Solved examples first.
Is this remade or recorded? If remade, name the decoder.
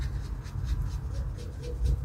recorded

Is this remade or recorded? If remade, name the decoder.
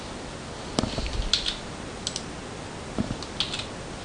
recorded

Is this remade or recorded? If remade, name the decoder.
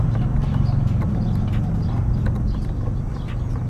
recorded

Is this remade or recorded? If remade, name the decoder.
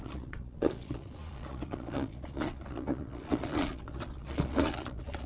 remade, vocoder, Vocos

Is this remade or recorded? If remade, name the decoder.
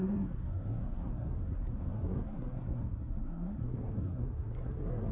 remade, codec, SNAC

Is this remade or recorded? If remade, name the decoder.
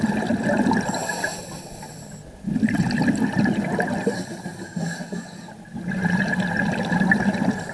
recorded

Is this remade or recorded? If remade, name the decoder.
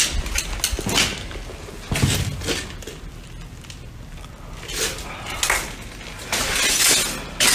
recorded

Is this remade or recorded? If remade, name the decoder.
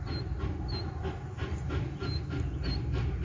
recorded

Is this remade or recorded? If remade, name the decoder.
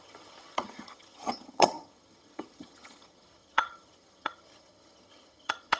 remade, vocoder, HiFi-GAN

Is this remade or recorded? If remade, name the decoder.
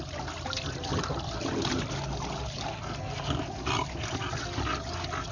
recorded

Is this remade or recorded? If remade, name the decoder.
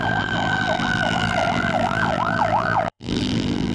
remade, vocoder, BigVGAN v2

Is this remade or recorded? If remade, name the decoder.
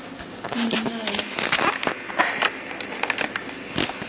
recorded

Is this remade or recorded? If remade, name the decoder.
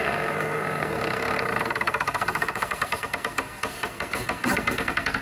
remade, codec, SNAC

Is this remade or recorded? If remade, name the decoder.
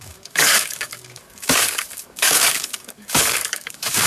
remade, codec, DAC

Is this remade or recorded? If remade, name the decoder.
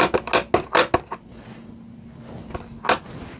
recorded